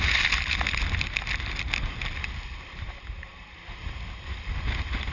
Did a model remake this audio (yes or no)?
no